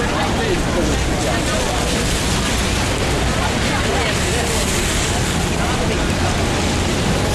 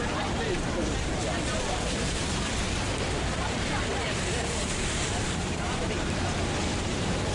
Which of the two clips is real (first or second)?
first